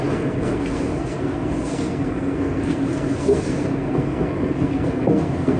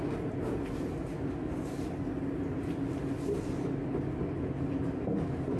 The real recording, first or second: second